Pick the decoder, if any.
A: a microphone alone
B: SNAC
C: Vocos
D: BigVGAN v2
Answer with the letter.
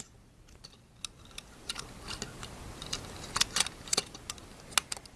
A